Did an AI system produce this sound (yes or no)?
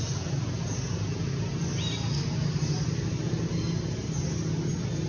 no